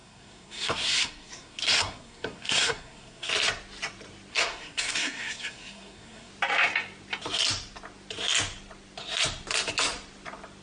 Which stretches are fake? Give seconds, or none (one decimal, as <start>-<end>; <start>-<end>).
0.0-3.3; 4.3-6.3

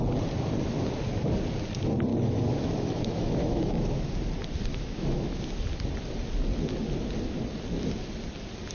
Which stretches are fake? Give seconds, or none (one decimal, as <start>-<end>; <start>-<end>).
2.1-4.1; 4.7-5.4